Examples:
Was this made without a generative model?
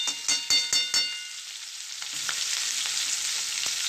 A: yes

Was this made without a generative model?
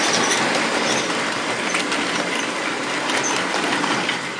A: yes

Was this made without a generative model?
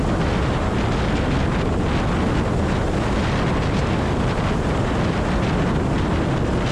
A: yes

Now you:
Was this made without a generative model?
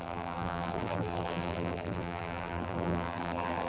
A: no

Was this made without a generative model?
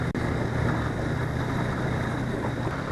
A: yes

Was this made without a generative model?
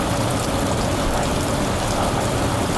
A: yes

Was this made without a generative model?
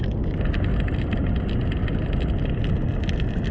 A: yes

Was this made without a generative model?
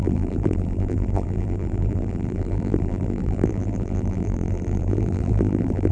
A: no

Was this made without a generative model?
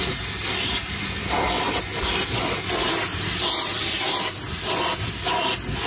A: yes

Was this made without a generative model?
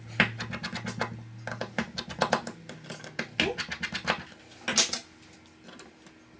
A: yes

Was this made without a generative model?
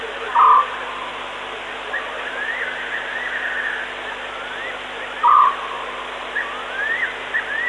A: yes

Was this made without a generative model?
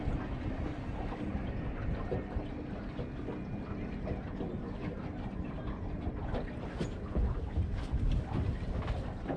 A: yes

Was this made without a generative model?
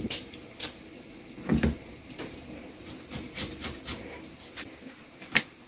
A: no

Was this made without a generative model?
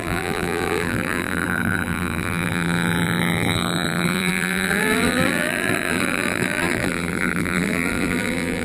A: no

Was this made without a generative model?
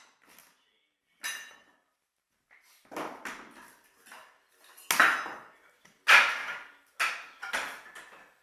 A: yes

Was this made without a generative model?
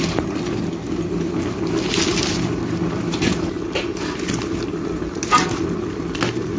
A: yes